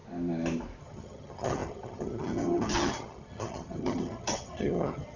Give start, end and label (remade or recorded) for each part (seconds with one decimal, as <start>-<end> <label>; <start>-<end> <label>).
0.0-0.8 recorded; 0.8-5.2 remade